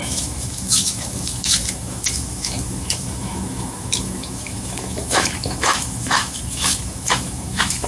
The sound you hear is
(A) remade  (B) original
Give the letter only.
A